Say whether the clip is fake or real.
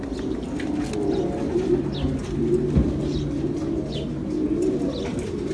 real